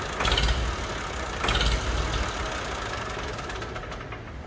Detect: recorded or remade recorded